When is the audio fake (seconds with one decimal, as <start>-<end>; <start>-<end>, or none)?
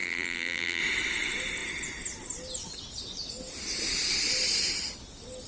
0.0-0.8